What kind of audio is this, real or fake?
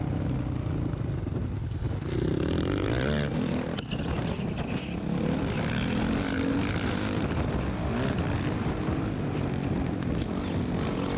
real